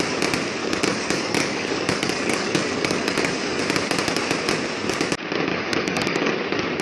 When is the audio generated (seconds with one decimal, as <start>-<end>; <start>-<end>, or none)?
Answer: 0.6-3.6; 5.5-6.3